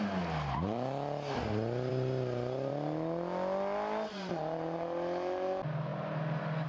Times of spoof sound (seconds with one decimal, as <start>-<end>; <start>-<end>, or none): 1.9-2.7